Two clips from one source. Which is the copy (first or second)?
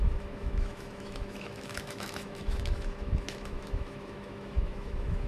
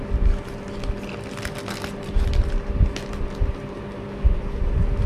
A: first